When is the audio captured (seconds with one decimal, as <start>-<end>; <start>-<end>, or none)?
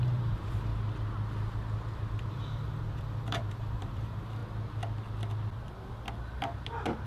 0.7-2.3; 4.4-7.1